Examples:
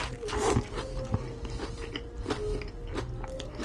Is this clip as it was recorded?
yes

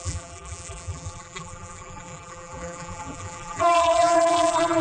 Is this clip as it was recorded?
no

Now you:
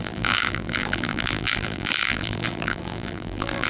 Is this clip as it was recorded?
no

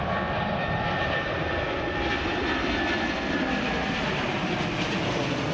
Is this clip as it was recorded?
no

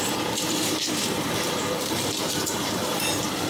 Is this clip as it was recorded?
no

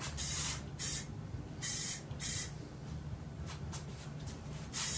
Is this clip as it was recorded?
no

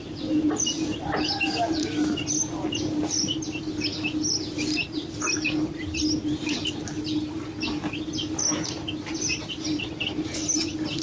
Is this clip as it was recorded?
yes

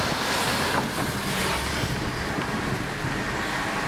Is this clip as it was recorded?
yes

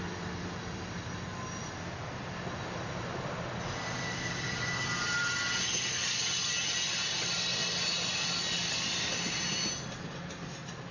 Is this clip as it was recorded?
yes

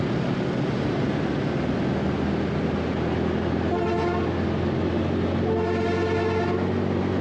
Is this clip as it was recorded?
yes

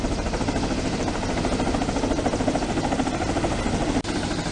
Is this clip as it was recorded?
yes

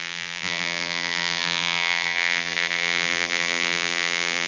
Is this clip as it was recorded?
no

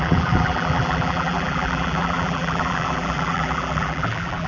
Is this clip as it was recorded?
no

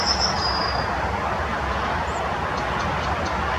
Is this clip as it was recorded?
yes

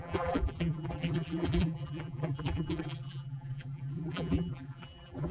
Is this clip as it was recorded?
no